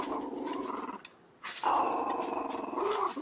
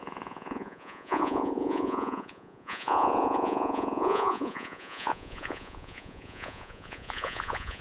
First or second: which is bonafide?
first